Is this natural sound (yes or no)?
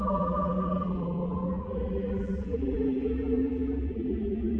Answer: no